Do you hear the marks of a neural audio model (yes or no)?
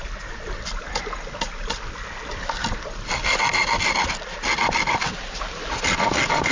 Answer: no